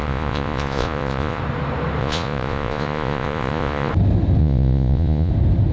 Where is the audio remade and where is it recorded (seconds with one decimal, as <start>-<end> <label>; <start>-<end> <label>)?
0.0-1.4 remade; 1.4-2.0 recorded; 2.0-3.9 remade; 3.9-4.4 recorded; 4.4-5.3 remade; 5.3-5.7 recorded